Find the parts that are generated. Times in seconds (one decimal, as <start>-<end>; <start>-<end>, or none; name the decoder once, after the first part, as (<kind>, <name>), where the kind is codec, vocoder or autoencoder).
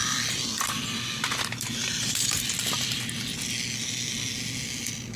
0.0-3.1 (vocoder, BigVGAN v2)